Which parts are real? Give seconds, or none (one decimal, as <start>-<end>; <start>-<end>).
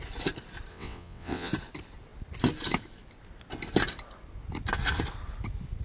0.0-0.7; 1.5-5.8